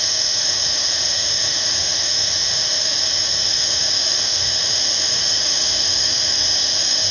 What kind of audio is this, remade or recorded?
remade